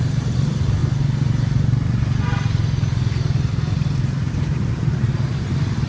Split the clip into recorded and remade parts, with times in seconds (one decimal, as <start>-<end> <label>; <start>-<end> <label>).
0.0-0.8 remade; 0.8-4.3 recorded; 4.3-5.9 remade